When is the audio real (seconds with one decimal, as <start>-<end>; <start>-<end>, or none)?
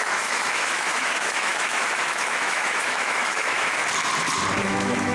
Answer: 3.8-4.6